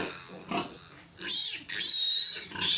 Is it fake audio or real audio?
fake